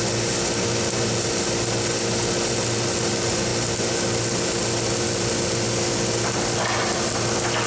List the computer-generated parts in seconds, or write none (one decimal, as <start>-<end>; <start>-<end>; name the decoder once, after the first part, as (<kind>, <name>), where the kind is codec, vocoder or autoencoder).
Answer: none